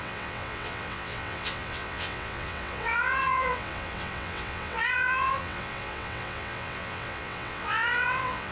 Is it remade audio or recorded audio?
remade